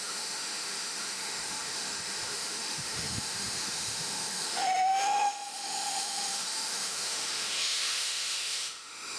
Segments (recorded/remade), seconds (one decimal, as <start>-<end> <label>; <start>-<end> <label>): 0.0-9.2 remade